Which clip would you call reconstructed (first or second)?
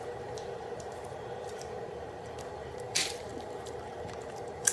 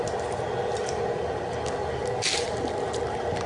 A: first